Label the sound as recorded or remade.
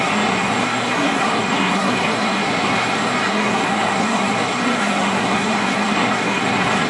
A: remade